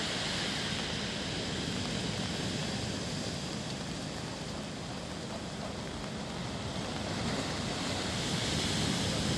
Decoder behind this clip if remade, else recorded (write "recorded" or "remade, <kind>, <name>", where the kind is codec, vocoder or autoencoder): recorded